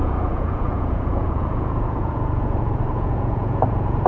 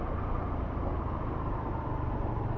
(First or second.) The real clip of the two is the second